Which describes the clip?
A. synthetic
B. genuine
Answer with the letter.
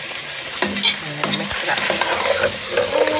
B